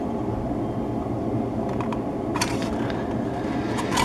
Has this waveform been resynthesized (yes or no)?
no